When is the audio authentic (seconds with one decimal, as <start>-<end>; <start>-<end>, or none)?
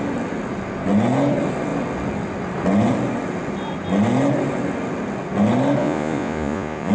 0.0-5.8